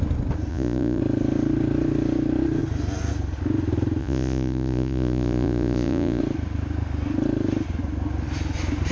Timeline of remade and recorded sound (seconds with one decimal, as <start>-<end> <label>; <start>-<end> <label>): 0.0-0.5 recorded; 0.5-1.0 remade; 1.0-4.0 recorded; 4.0-6.2 remade; 6.2-8.9 recorded